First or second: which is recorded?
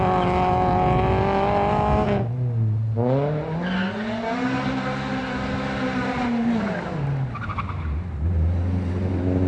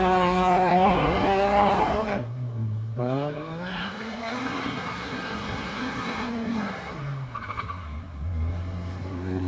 first